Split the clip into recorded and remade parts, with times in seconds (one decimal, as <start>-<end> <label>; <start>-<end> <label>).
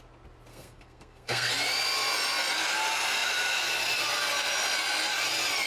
0.0-0.5 recorded; 0.5-1.5 remade; 1.5-5.7 recorded